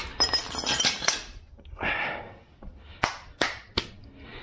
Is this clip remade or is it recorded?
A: recorded